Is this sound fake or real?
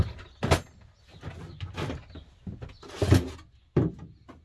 real